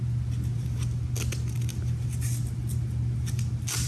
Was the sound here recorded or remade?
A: recorded